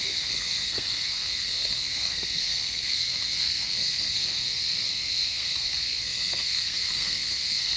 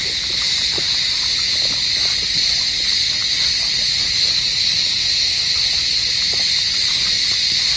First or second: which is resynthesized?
first